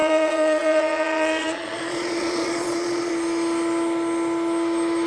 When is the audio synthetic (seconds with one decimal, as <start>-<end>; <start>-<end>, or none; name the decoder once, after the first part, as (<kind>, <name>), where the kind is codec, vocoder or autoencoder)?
0.0-3.1 (vocoder, Vocos)